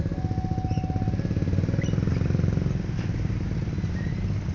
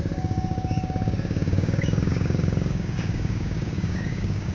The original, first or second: first